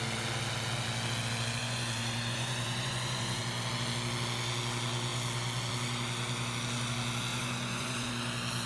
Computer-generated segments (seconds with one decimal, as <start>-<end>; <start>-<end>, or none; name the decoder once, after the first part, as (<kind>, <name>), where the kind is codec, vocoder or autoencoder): 1.6-3.4 (vocoder, Vocos); 7.3-8.1